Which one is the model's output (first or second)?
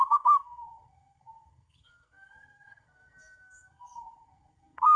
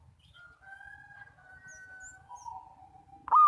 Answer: first